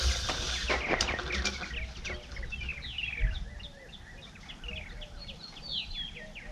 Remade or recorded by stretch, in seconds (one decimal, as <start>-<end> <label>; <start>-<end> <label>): 0.0-6.5 recorded